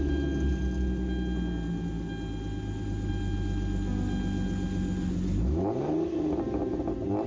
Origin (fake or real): real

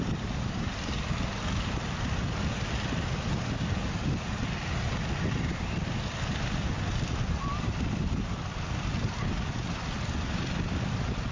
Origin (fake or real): real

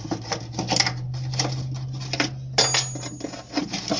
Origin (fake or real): real